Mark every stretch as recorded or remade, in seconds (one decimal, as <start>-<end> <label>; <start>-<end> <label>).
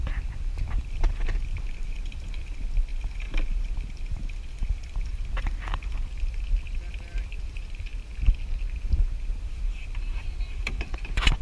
0.0-7.9 remade; 7.9-9.2 recorded; 9.2-11.4 remade